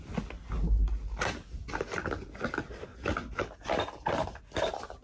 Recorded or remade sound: recorded